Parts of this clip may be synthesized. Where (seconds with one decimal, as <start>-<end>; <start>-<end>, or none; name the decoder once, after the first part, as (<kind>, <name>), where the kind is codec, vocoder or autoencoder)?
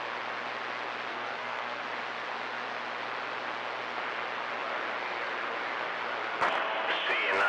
1.1-1.8 (codec, SNAC)